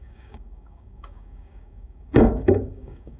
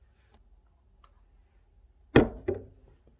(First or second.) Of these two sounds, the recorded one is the second